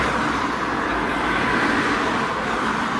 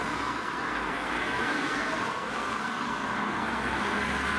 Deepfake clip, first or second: second